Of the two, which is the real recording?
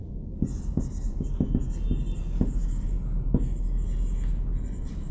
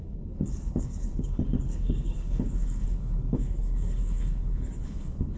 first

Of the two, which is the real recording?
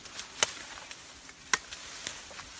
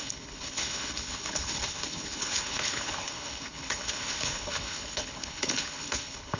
first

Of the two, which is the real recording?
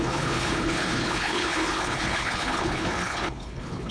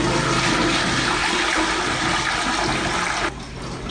second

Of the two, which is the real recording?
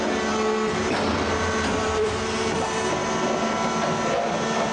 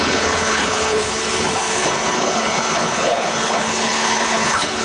first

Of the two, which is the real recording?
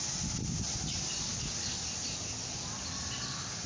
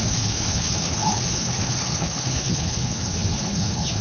first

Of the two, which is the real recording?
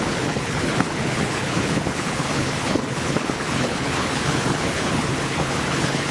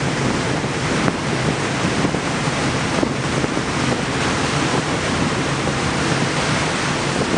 second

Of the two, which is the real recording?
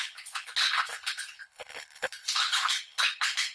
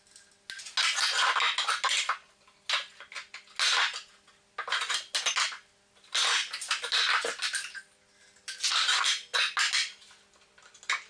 second